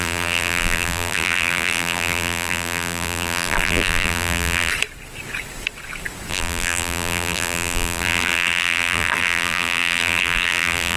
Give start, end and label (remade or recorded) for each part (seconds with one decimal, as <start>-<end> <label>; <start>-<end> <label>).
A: 0.0-4.7 remade; 4.7-6.3 recorded; 6.3-11.0 remade